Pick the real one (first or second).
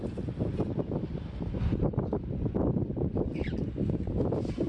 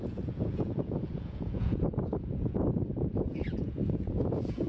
first